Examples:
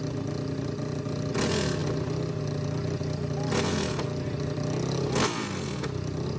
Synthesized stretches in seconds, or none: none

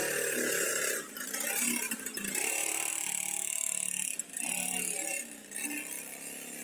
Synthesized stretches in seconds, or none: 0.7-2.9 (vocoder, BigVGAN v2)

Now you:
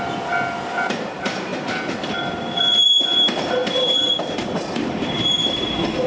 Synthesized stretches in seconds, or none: 0.0-1.5 (vocoder, BigVGAN v2); 2.0-6.1

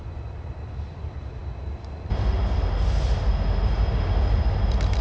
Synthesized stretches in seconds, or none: none

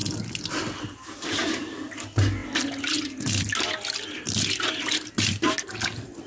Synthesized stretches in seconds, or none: none